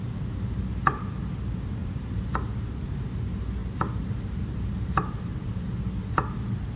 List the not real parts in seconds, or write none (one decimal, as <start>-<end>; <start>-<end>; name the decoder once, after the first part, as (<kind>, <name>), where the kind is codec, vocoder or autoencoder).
1.8-3.1 (vocoder, BigVGAN v2); 3.6-5.8